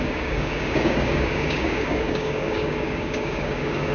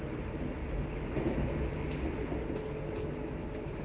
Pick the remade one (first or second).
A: first